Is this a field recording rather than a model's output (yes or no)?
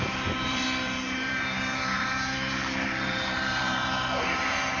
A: no